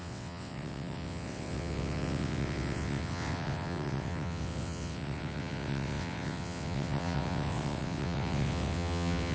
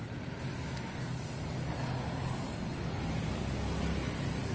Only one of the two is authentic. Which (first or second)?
second